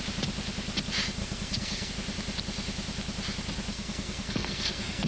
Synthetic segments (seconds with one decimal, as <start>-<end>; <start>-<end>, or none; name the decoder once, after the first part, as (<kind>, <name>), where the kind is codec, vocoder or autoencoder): 1.2-1.9 (codec, SNAC); 3.7-5.1